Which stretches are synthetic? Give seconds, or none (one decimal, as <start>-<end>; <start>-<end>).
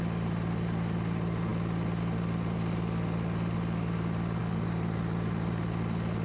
none